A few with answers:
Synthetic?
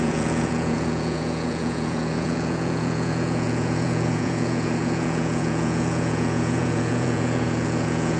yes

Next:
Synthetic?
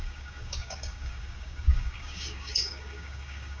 yes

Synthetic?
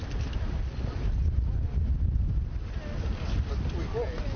no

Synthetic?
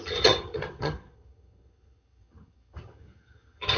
yes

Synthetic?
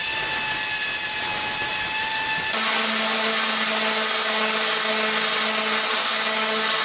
no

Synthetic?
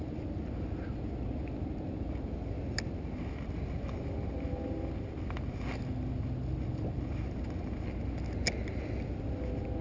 no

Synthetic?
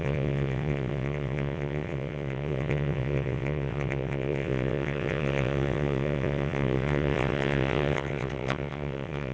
yes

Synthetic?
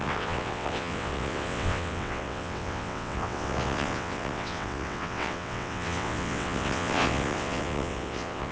yes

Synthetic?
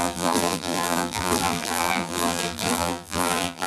yes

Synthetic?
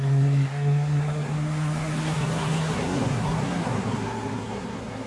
yes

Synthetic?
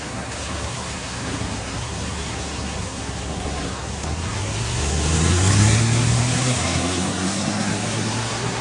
yes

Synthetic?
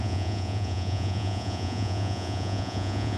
yes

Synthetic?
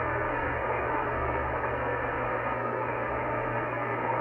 yes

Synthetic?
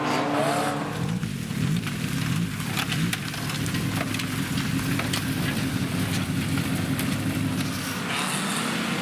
no